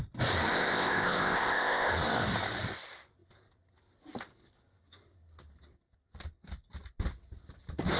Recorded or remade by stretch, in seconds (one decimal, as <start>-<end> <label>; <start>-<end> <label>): 0.0-0.5 recorded; 0.5-1.9 remade; 1.9-8.0 recorded